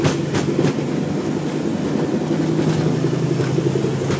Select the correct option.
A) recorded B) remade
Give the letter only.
A